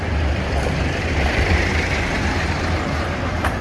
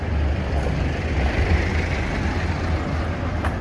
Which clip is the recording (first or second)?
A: second